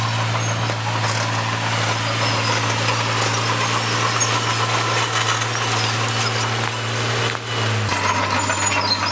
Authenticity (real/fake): real